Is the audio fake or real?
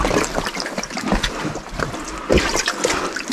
real